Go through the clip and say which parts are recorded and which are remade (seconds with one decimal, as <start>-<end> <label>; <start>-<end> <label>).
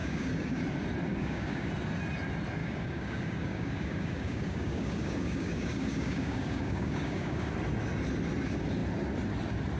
0.0-0.6 remade; 0.6-1.1 recorded; 1.1-1.7 remade; 1.7-2.6 recorded; 2.6-7.5 remade; 7.5-9.8 recorded